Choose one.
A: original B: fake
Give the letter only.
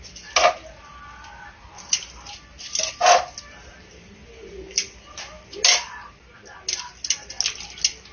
A